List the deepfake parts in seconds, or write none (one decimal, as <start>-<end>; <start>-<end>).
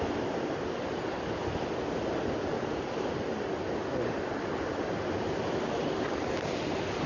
none